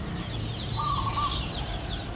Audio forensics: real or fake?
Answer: real